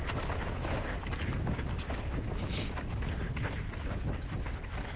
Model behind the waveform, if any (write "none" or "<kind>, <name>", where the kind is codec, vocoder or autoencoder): none